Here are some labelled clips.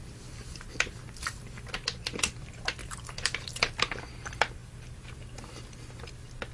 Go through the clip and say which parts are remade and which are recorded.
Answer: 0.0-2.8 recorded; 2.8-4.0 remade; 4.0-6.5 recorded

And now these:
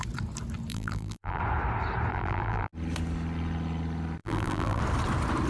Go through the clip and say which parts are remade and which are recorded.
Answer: 0.0-0.7 recorded; 0.7-1.4 remade; 1.4-2.1 recorded; 2.1-2.7 remade; 2.7-4.2 recorded; 4.2-4.8 remade; 4.8-5.5 recorded

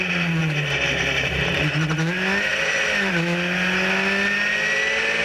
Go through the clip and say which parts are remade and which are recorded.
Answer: 0.0-0.4 recorded; 0.4-1.6 remade; 1.6-2.5 recorded; 2.5-3.1 remade; 3.1-5.2 recorded

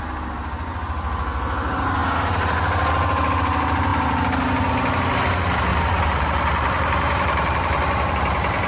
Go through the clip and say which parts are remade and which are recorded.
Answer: 0.0-3.9 recorded; 3.9-4.7 remade; 4.7-5.7 recorded; 5.7-8.1 remade; 8.1-8.7 recorded